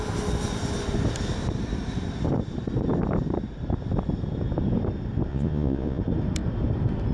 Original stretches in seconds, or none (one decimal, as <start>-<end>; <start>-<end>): 0.0-5.3; 6.0-7.1

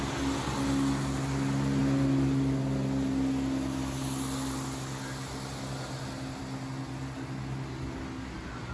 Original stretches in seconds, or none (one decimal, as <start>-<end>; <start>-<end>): 0.0-8.7

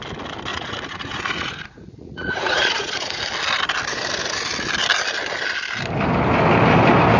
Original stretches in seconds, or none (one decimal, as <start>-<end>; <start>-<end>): 0.0-0.5; 3.2-7.2

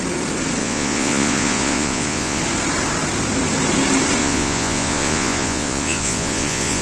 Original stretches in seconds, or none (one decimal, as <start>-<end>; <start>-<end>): 0.0-0.6; 2.4-4.2

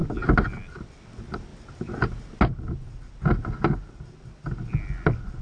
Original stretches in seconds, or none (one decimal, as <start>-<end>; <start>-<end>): 0.0-5.4